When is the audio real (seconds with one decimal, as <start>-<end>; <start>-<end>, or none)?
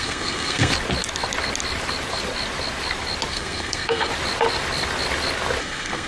0.7-3.3; 4.1-5.6